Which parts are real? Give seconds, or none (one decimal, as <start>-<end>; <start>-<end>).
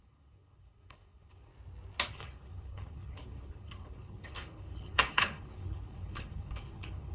1.5-2.1